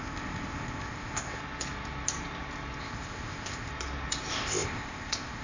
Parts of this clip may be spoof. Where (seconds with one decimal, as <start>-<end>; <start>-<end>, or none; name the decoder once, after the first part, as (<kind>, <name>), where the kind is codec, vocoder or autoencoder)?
0.0-1.4 (codec, ZipCodec); 2.8-3.7; 4.3-5.4